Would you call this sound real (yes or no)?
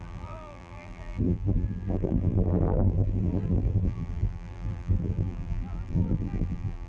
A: no